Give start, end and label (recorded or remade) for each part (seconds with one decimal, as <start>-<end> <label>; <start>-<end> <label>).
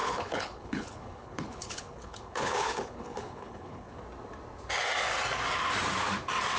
0.0-4.0 remade; 4.0-6.6 recorded